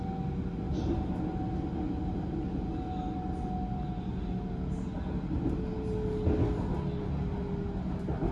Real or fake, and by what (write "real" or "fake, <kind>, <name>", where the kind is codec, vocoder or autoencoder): real